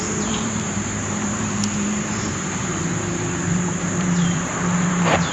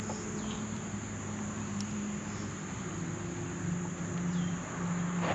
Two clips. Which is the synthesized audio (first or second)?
first